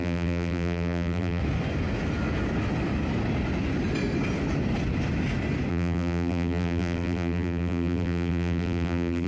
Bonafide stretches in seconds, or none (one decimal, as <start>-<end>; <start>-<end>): 1.4-5.7